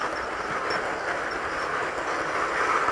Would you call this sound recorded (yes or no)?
yes